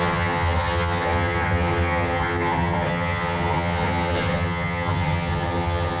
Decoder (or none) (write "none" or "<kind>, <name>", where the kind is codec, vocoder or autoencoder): vocoder, HiFi-GAN